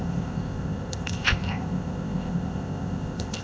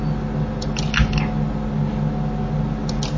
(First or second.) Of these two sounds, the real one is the second